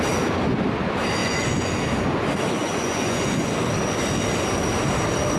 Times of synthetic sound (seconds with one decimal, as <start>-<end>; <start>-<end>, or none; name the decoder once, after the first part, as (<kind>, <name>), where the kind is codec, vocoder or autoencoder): 1.2-1.8 (vocoder, Vocos); 2.6-3.5